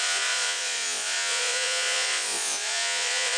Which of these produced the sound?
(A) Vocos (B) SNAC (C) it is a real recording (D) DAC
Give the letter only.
A